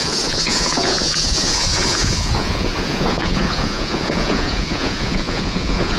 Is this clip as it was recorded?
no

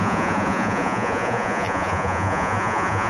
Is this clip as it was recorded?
no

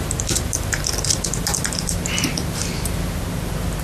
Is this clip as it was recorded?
yes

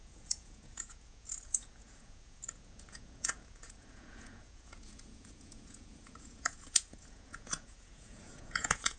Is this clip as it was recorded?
no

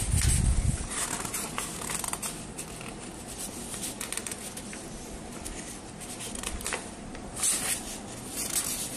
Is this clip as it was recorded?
yes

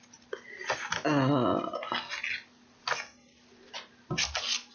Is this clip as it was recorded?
yes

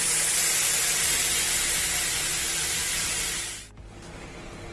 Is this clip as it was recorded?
yes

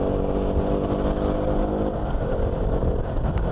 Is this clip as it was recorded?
yes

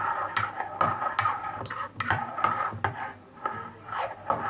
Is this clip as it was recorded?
yes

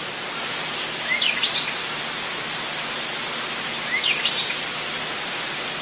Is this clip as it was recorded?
yes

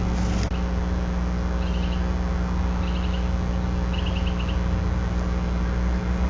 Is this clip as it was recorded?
yes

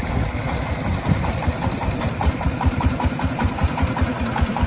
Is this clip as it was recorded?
yes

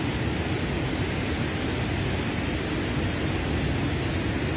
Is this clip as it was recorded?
yes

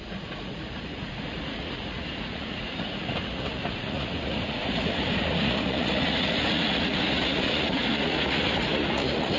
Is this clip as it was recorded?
no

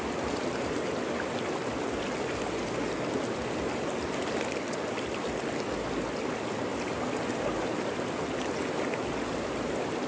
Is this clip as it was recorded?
yes